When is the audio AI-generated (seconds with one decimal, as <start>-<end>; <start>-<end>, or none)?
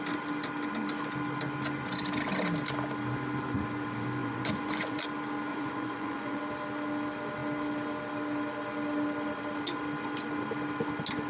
4.2-5.0; 5.5-6.4